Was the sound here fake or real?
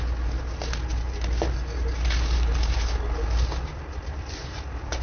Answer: real